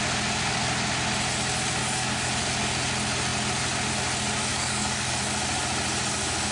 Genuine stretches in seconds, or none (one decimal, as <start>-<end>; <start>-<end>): 0.0-1.8; 2.3-4.5; 5.2-6.5